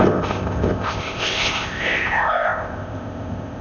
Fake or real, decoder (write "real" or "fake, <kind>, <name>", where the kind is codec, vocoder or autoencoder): fake, codec, ZipCodec